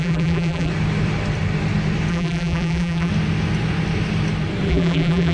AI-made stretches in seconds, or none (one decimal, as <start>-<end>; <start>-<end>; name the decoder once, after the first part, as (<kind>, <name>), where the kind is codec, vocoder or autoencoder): 0.0-0.7 (vocoder, BigVGAN v2); 2.1-3.1; 4.7-5.3